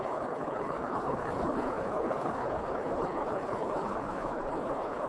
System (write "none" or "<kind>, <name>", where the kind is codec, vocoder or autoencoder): codec, HILCodec